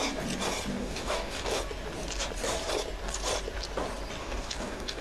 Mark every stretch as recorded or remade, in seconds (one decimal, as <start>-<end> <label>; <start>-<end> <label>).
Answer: 0.0-0.7 recorded; 0.7-1.6 remade; 1.6-4.2 recorded; 4.2-5.0 remade